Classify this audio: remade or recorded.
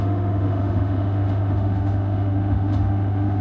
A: remade